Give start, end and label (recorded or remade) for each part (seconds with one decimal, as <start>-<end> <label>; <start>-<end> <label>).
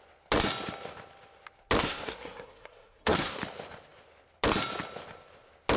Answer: 0.0-1.8 recorded; 1.8-3.4 remade; 3.4-5.8 recorded